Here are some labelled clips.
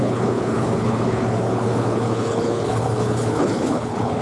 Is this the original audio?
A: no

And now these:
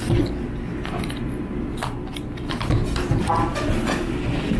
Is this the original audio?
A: yes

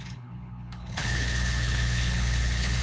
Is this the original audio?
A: no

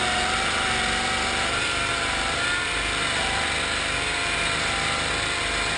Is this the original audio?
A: yes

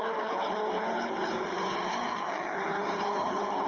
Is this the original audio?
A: no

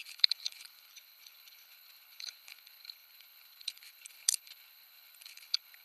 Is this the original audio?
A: no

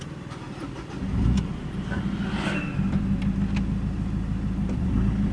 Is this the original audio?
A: yes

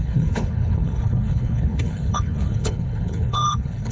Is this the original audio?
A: no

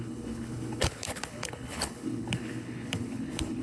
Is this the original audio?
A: no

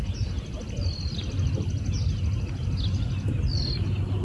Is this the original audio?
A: yes